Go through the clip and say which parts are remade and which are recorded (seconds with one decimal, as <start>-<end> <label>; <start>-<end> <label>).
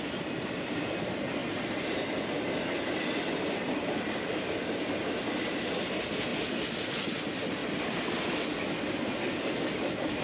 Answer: 0.0-10.2 recorded